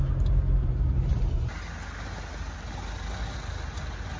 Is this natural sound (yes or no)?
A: yes